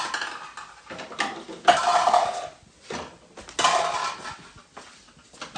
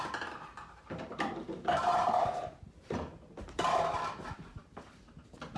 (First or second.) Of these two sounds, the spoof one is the second